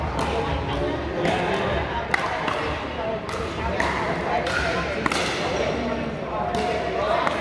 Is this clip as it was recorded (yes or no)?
yes